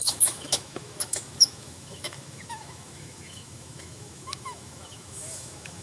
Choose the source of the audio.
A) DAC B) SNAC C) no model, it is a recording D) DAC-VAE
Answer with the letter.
D